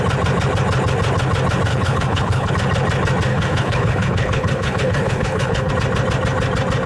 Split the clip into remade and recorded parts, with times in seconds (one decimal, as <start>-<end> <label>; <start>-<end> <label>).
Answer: 0.0-1.7 recorded; 1.7-2.5 remade; 2.5-3.3 recorded; 3.3-5.7 remade; 5.7-6.9 recorded